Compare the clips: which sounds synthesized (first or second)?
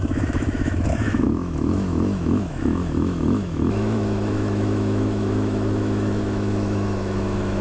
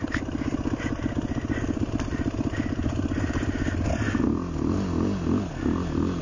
first